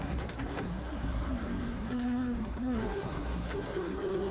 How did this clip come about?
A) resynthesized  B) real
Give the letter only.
A